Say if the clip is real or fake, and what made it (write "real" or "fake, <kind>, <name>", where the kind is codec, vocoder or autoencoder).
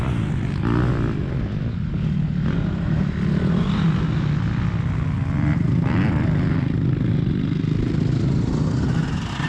real